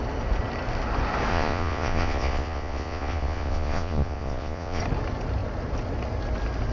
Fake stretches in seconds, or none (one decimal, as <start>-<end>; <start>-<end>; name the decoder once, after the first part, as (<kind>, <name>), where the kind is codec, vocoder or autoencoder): 1.3-4.8 (vocoder, Vocos)